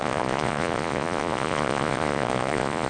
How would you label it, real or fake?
fake